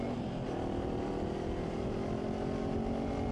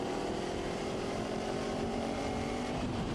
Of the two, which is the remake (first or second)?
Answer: second